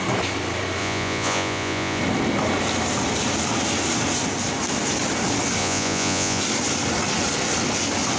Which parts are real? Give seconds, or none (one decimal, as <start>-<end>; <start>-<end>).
0.0-0.8; 2.0-5.6; 6.4-8.2